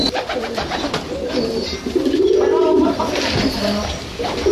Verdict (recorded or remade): recorded